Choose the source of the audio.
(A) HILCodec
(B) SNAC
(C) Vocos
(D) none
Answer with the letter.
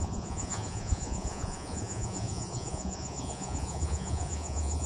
C